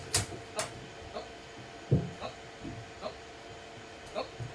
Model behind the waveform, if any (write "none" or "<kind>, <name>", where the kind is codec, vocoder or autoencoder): none